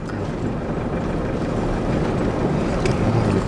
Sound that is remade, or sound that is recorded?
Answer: recorded